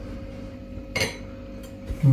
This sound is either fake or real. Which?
real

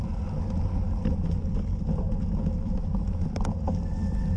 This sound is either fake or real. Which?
real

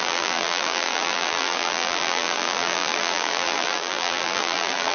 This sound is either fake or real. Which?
fake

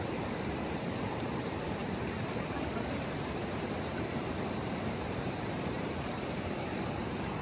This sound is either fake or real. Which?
fake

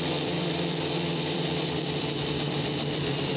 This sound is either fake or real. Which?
fake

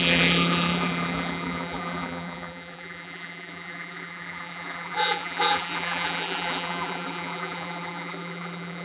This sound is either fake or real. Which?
fake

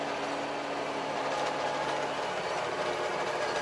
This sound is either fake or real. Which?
real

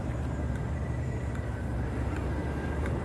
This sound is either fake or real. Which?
fake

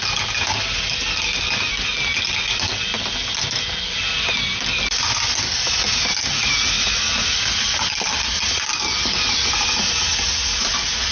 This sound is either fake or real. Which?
real